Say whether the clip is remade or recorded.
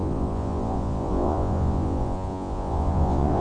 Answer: remade